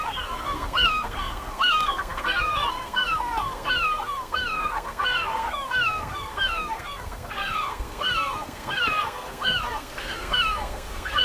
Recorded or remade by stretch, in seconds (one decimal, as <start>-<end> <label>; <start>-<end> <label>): 0.0-11.2 remade